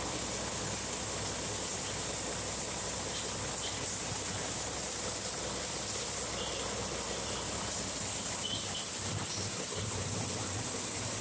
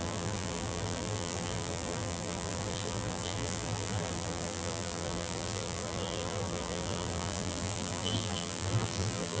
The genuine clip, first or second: first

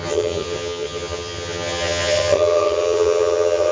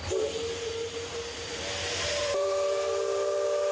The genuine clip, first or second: second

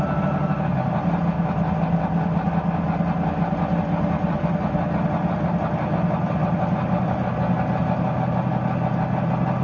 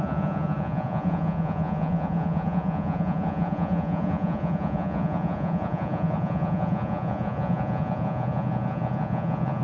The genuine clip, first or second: first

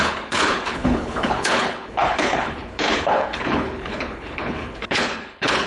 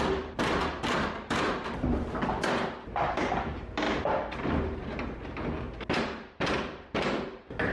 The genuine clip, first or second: second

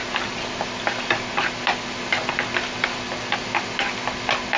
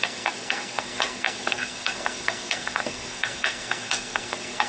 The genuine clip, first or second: first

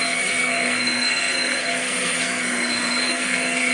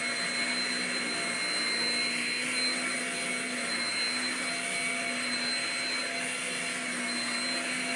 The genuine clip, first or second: second